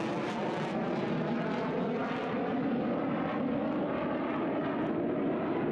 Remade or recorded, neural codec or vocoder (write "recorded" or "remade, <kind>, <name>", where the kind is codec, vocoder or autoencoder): recorded